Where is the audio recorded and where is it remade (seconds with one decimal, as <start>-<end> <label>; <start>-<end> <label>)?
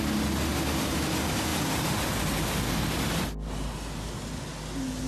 0.0-5.1 recorded